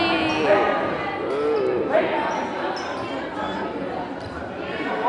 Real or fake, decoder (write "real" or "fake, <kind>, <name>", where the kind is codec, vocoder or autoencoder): real